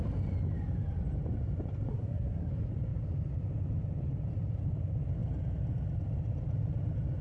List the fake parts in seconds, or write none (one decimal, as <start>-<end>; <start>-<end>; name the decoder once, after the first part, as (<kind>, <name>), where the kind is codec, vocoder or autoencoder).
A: 1.9-2.5 (codec, SNAC)